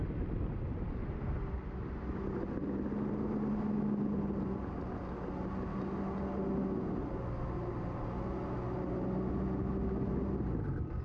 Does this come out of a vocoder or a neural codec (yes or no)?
no